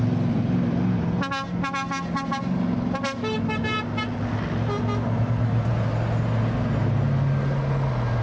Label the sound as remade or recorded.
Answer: recorded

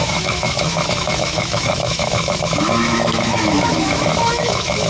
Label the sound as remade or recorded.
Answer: remade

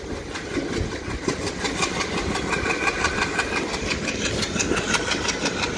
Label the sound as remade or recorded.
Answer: recorded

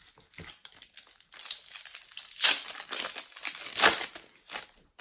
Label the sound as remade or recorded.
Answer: recorded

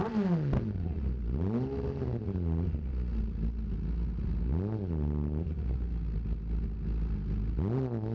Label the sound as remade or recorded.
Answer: recorded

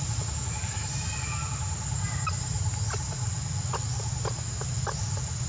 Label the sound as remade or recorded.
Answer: recorded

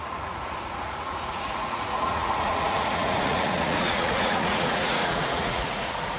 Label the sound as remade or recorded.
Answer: remade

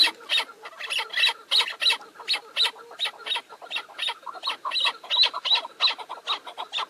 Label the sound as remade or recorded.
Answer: recorded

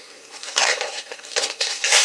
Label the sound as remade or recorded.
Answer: remade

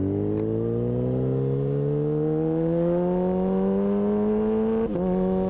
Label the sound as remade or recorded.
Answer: recorded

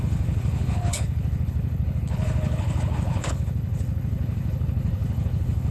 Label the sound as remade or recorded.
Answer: remade